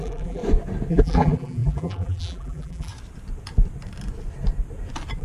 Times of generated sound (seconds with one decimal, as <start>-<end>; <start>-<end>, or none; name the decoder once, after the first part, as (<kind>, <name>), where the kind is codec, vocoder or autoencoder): 0.0-0.4 (vocoder, BigVGAN v2); 0.9-2.9